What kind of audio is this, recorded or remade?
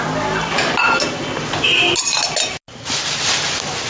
recorded